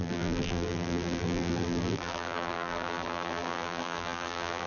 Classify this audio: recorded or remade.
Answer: remade